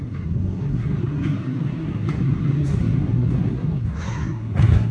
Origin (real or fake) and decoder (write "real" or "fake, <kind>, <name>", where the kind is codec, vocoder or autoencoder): fake, codec, SNAC